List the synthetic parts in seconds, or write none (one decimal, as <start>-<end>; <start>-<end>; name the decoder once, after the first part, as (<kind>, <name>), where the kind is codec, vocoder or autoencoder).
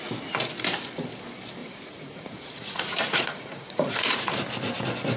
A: 1.6-4.4 (vocoder, Vocos)